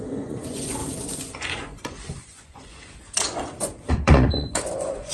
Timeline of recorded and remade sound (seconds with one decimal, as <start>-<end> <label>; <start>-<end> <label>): 0.0-5.1 remade